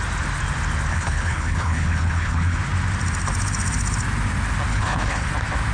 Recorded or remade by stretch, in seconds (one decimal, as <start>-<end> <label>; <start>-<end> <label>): 0.0-0.9 recorded; 0.9-2.6 remade; 2.6-4.7 recorded; 4.7-5.3 remade; 5.3-5.7 recorded